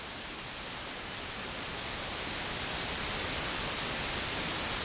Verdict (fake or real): real